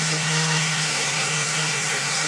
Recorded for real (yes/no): no